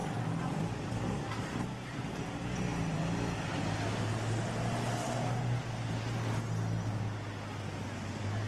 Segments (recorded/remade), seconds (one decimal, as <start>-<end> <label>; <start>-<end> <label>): 0.0-8.5 recorded